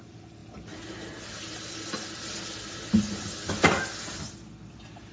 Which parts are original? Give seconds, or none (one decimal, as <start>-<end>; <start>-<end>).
0.0-5.1

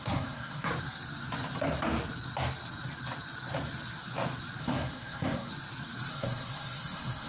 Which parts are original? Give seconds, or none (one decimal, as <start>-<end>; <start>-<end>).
0.7-4.6; 5.5-6.1

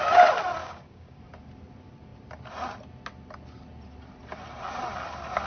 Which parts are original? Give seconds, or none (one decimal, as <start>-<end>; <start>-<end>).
0.0-0.6; 1.2-5.5

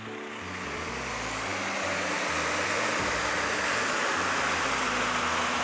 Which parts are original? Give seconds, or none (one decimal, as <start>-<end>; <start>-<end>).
0.0-5.6